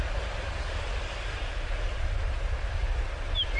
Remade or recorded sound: recorded